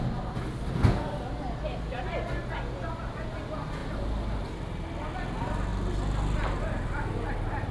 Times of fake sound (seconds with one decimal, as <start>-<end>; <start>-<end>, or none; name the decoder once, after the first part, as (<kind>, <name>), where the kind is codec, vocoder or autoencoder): none